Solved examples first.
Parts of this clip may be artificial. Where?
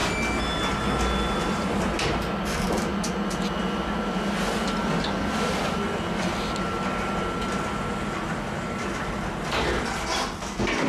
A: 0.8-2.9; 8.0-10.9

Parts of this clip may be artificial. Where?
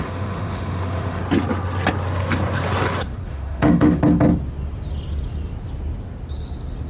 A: 0.0-1.2; 3.3-4.0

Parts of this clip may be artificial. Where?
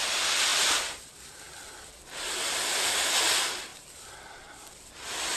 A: 3.7-4.9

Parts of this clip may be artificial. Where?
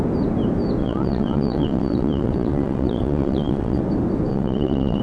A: 0.8-3.8; 4.3-5.0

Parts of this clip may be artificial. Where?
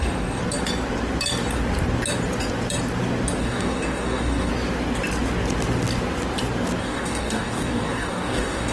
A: 0.0-0.4; 3.4-4.5; 6.8-8.7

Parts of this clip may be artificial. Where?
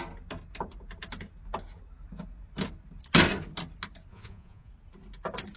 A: 4.1-4.7